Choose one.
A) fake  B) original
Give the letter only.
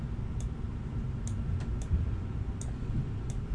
B